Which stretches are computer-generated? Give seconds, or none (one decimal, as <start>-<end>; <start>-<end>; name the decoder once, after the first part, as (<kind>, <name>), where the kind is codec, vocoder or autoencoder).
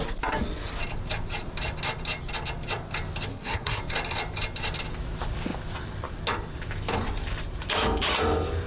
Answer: 3.3-3.8 (codec, SNAC)